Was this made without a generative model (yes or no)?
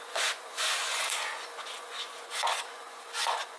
no